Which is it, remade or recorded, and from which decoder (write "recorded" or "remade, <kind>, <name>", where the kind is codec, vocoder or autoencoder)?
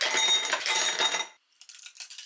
recorded